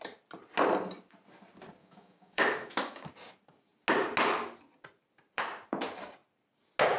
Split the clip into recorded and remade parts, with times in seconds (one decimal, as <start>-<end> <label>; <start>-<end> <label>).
0.0-1.8 recorded; 1.8-3.1 remade; 3.1-7.0 recorded